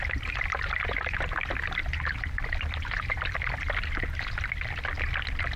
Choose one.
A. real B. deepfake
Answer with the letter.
A